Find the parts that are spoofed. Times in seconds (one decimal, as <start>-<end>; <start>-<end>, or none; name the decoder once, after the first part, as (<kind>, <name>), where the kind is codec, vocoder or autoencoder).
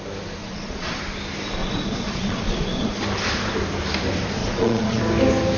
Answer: 0.4-1.0 (vocoder, Vocos); 1.6-2.9; 4.4-5.0